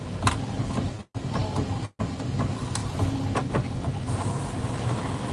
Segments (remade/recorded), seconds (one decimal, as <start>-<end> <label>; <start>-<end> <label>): 0.0-5.3 recorded